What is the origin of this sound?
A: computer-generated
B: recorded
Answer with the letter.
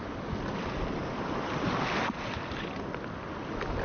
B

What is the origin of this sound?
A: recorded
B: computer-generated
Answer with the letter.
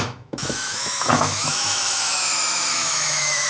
B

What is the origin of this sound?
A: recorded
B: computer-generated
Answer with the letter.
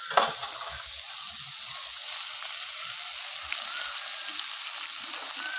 A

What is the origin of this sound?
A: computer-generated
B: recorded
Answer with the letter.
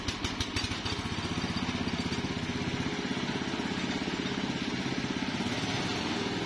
B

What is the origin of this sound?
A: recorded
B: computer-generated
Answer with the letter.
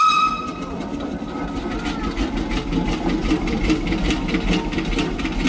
A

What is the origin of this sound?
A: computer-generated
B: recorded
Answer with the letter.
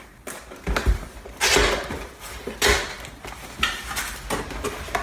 B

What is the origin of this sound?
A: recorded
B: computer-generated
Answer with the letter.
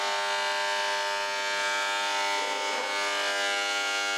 A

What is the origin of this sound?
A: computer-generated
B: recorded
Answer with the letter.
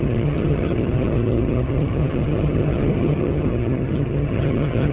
A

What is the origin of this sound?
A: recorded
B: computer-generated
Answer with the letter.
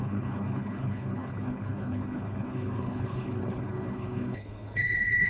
B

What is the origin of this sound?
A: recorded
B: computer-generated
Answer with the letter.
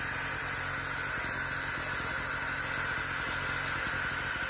A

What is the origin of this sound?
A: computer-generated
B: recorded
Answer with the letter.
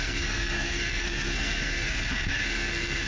A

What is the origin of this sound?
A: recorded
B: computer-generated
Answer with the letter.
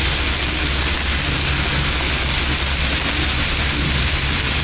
A